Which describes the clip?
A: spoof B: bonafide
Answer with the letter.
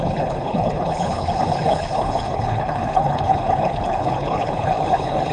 A